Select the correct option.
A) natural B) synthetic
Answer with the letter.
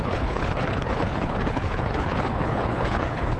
B